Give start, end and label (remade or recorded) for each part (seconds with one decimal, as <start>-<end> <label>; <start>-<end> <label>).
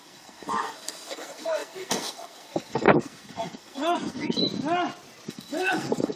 0.0-4.4 remade; 4.4-5.3 recorded; 5.3-6.2 remade